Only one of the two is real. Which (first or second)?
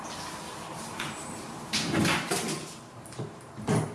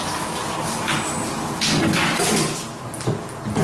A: second